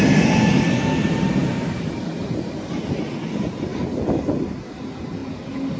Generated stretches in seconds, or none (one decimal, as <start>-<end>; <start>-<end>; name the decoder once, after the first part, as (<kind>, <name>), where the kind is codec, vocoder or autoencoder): none